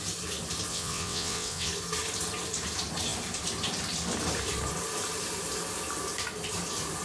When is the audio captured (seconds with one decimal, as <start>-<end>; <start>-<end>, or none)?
0.0-0.7; 1.7-7.0